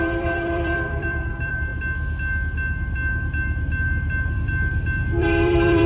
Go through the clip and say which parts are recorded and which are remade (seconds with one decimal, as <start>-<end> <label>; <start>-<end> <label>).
0.0-1.7 remade; 1.7-5.2 recorded; 5.2-5.9 remade